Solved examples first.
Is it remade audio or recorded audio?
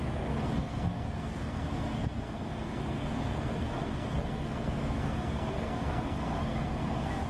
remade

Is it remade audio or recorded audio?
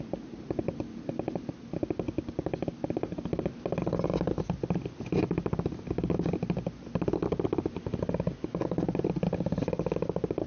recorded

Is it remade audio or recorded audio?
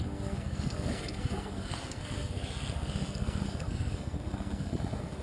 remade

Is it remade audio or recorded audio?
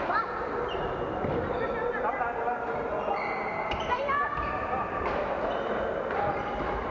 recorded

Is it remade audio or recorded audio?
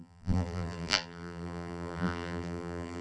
remade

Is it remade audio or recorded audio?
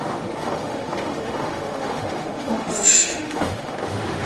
remade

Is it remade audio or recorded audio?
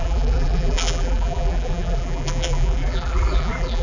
remade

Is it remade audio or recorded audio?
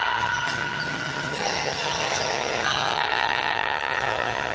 remade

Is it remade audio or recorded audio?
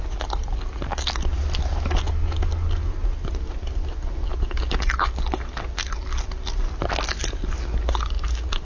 recorded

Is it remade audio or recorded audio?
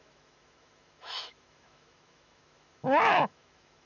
remade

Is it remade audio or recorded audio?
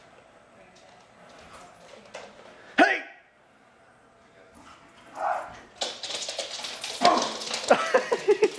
recorded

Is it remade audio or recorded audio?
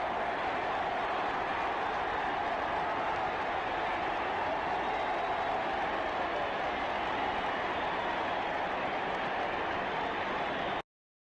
recorded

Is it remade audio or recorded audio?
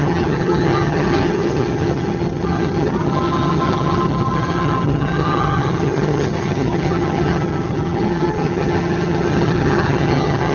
remade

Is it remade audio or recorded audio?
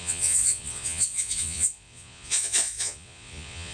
remade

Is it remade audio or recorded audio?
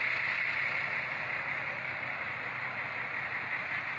remade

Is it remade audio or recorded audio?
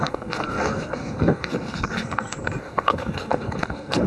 remade